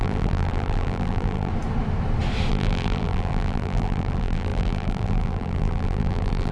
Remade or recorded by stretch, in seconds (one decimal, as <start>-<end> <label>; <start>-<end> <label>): 0.0-1.5 remade; 1.5-2.5 recorded; 2.5-6.5 remade